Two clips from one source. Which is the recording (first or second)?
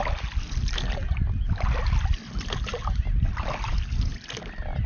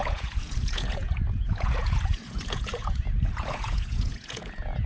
first